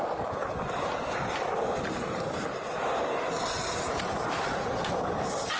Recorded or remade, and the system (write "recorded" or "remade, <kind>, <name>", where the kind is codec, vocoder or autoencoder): recorded